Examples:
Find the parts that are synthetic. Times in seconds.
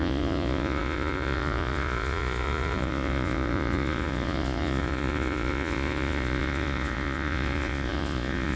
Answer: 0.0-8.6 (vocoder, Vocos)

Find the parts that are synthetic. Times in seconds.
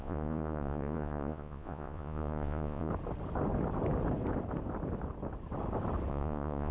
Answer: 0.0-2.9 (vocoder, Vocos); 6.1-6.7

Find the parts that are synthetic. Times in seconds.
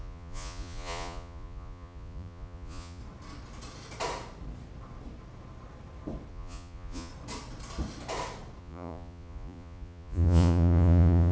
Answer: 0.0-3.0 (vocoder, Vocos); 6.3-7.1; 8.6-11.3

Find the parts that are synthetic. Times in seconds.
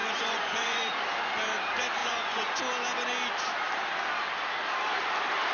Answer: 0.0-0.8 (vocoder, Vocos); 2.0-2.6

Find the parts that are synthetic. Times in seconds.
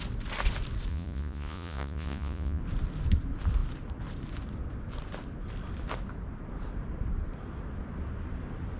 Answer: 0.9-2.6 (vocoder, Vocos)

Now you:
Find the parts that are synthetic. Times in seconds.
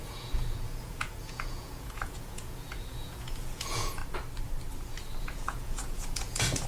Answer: 0.0-4.0 (vocoder, Vocos); 5.2-6.7